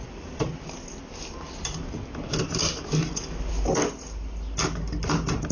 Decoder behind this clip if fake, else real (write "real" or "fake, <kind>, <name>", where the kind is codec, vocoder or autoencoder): real